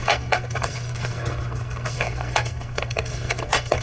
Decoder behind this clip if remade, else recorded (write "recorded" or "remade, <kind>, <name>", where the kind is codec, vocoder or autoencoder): remade, codec, SNAC